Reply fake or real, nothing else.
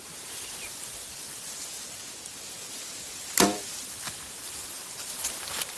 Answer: real